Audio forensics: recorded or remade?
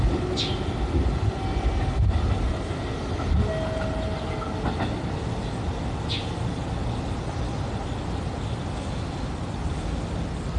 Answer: recorded